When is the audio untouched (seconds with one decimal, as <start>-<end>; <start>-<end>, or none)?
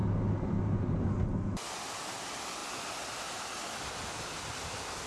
0.0-5.1